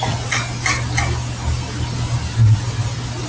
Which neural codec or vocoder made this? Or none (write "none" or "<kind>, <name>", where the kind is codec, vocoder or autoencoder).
none